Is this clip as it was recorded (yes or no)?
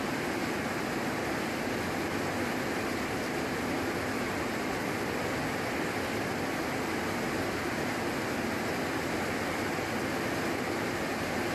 yes